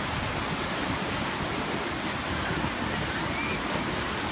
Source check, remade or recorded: recorded